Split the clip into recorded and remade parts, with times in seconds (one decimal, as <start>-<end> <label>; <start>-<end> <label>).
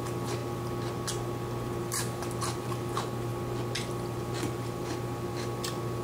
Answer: 0.0-0.4 remade; 0.4-1.8 recorded; 1.8-3.3 remade; 3.3-3.9 recorded; 3.9-6.0 remade